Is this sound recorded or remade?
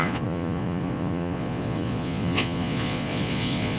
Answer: remade